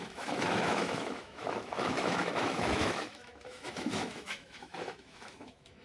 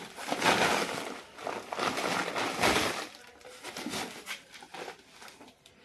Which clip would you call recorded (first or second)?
second